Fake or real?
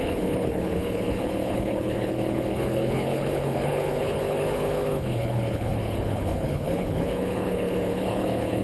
fake